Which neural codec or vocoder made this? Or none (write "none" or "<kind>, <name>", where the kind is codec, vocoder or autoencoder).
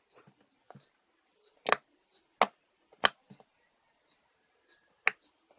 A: none